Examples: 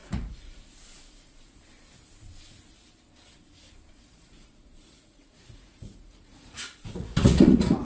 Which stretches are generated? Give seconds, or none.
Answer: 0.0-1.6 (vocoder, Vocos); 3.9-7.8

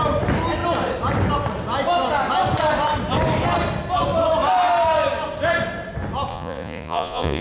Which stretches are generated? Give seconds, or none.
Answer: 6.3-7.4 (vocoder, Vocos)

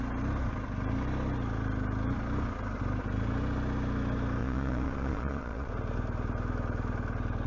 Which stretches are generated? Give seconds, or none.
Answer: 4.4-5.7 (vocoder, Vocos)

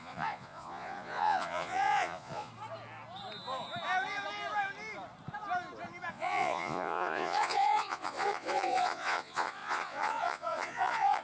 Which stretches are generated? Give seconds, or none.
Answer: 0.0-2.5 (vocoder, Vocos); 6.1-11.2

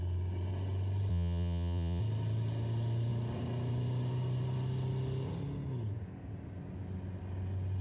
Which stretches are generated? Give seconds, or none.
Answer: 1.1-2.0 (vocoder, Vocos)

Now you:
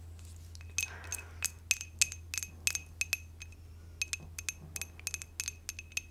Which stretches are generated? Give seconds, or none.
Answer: none

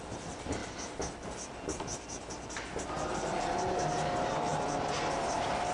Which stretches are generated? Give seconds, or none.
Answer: none